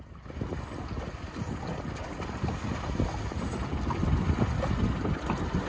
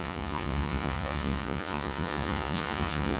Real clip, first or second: first